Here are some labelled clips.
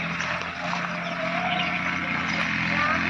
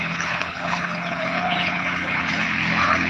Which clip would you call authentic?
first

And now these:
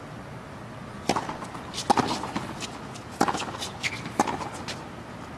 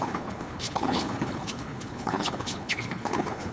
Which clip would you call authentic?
first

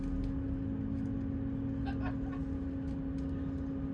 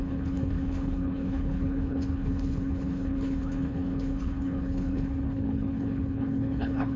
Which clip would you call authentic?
first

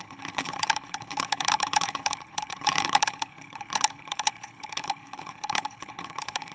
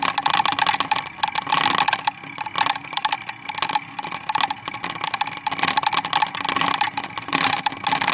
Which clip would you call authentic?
second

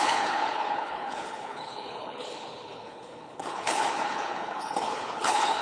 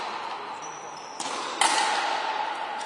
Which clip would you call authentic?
second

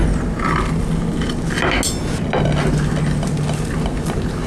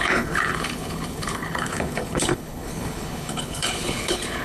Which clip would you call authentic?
first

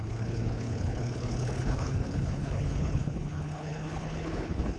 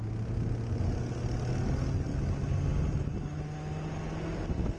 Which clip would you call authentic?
second